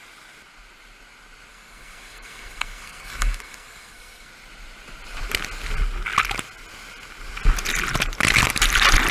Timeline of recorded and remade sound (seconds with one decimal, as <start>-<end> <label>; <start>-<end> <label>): 0.0-1.5 recorded; 1.5-4.3 remade; 4.3-9.1 recorded